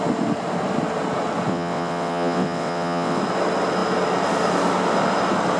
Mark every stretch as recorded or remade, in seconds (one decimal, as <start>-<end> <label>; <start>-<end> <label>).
0.0-1.5 recorded; 1.5-3.2 remade; 3.2-5.6 recorded